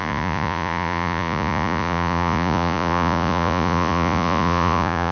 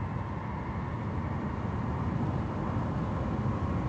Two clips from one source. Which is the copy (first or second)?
first